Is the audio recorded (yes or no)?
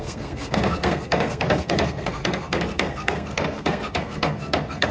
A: no